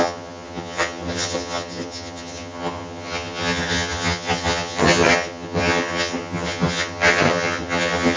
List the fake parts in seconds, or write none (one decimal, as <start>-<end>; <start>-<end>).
0.0-8.2